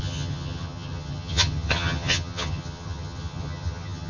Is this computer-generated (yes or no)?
yes